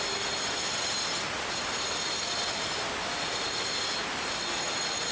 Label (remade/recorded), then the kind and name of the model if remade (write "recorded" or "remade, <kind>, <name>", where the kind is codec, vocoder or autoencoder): recorded